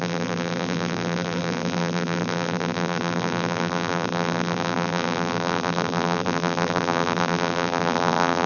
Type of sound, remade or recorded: remade